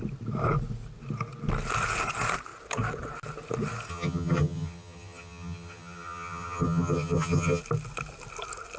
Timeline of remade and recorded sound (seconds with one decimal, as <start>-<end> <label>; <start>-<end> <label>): 0.0-3.9 recorded; 3.9-7.6 remade; 7.6-8.8 recorded